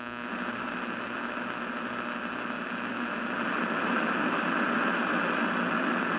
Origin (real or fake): real